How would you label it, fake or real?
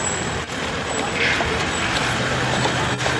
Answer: real